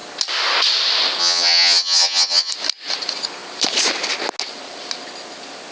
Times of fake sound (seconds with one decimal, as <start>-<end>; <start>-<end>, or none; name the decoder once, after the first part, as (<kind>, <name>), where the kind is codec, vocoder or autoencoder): 1.2-2.5 (vocoder, HiFi-GAN)